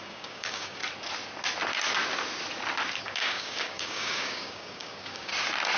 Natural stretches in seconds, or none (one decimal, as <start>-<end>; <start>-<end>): 0.8-3.0; 5.3-5.8